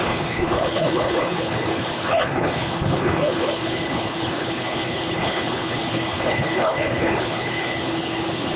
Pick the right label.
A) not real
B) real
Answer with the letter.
A